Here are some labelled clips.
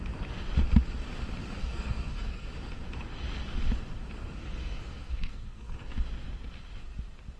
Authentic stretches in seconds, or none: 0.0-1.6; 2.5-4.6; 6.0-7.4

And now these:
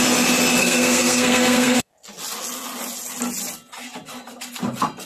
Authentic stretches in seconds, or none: 0.0-0.6; 1.9-5.1

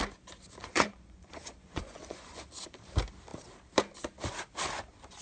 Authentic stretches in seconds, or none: 0.0-0.6; 2.4-5.2